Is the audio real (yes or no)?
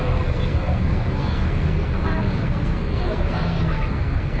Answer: no